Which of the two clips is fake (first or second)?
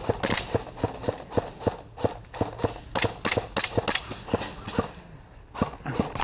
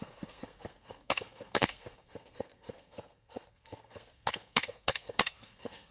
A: second